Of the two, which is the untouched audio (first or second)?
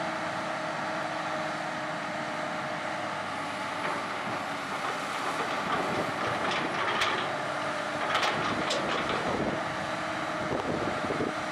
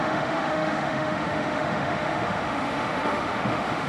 first